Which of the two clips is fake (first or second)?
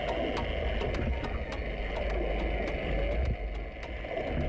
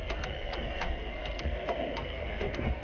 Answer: second